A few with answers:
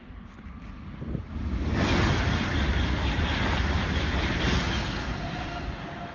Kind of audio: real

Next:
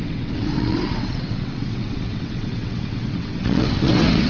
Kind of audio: fake